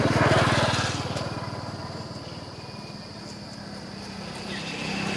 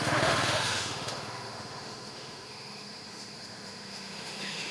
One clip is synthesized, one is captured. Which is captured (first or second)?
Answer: first